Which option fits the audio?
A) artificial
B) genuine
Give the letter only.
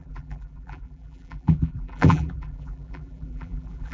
A